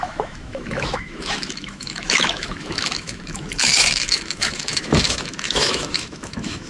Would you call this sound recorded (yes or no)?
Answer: no